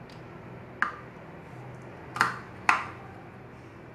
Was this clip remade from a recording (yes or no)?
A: no